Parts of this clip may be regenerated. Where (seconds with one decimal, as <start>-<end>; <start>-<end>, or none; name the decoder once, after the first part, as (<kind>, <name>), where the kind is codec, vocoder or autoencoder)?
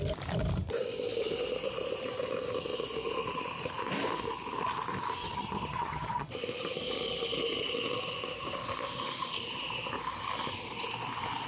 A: 5.2-6.3 (vocoder, HiFi-GAN)